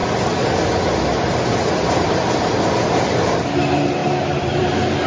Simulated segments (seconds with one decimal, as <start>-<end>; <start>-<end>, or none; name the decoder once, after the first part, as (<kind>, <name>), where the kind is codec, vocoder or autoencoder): 1.7-5.1 (vocoder, BigVGAN v2)